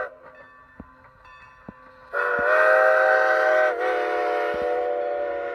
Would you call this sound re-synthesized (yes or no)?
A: no